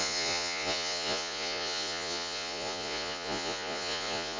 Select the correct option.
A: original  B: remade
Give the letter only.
B